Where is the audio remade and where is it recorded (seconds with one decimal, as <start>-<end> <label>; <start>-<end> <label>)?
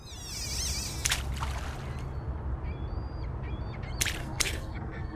0.0-4.2 recorded; 4.2-5.2 remade